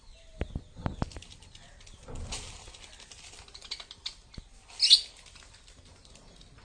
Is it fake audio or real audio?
real